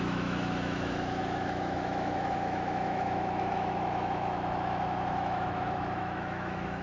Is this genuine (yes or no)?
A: no